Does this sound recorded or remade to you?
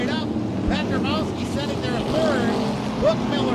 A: recorded